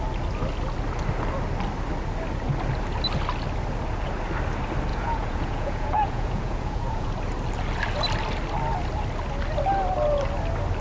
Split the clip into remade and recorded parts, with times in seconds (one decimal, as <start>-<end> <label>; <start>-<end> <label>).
0.0-4.9 recorded; 4.9-7.1 remade; 7.1-10.8 recorded